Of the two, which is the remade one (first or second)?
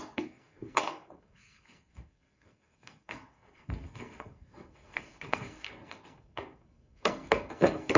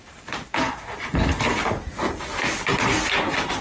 first